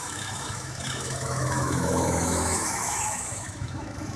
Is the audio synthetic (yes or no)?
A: yes